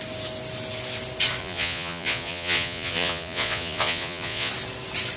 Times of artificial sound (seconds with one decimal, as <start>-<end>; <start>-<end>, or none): 1.4-4.5